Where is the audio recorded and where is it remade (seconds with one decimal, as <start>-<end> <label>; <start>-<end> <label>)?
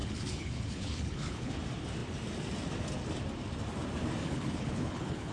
0.0-1.5 remade; 1.5-4.2 recorded; 4.2-5.3 remade